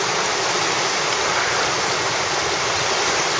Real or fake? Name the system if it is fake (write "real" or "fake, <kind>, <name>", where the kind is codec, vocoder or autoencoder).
real